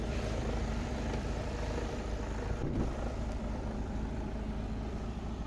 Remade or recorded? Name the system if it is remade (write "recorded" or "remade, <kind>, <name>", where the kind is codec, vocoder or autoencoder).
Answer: remade, vocoder, BigVGAN v2